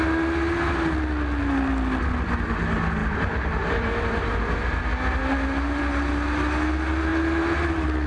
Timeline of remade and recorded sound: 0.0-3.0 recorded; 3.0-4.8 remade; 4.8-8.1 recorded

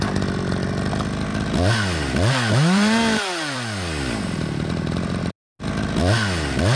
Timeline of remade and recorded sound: 0.0-1.3 recorded; 1.3-5.3 remade; 5.3-6.8 recorded

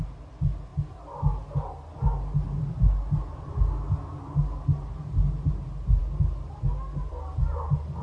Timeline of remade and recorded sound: 0.0-8.0 recorded

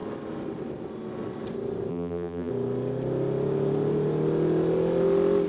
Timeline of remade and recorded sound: 0.0-1.9 recorded; 1.9-2.5 remade; 2.5-5.5 recorded